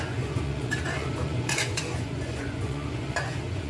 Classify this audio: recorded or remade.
remade